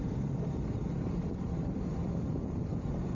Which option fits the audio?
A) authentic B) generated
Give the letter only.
A